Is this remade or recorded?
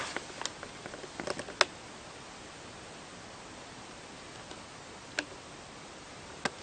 recorded